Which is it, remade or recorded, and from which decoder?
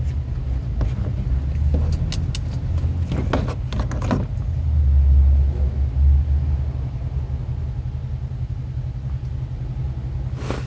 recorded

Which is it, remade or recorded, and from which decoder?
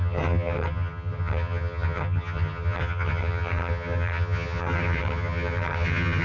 remade, vocoder, HiFi-GAN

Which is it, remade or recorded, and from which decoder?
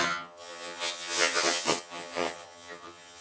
remade, vocoder, HiFi-GAN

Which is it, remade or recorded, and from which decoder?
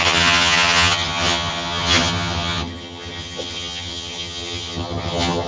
remade, vocoder, HiFi-GAN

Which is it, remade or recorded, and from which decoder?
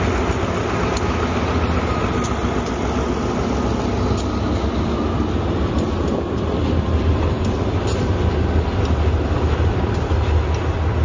recorded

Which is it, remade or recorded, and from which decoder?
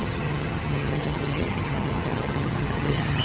remade, vocoder, HiFi-GAN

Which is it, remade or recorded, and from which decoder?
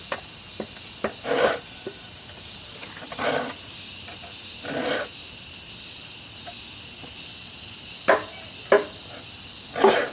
recorded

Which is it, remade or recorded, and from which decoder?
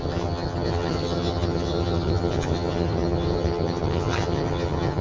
remade, vocoder, HiFi-GAN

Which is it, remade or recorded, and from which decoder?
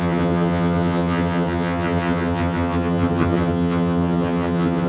remade, vocoder, HiFi-GAN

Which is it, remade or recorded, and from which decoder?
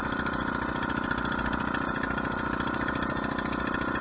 recorded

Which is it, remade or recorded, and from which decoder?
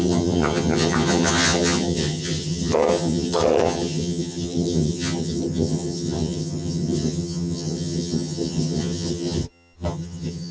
remade, vocoder, HiFi-GAN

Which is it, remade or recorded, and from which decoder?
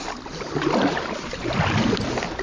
recorded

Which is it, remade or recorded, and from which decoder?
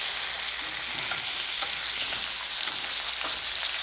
recorded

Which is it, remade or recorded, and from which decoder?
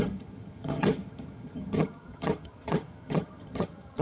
remade, vocoder, HiFi-GAN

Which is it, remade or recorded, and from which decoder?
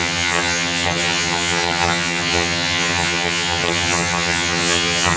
remade, vocoder, HiFi-GAN